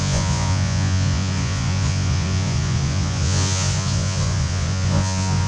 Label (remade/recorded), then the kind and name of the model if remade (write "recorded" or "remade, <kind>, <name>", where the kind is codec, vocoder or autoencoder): remade, vocoder, Vocos